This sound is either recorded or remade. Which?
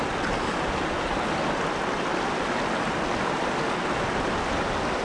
recorded